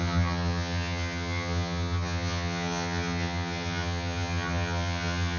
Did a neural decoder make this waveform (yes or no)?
yes